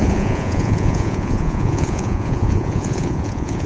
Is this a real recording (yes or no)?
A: no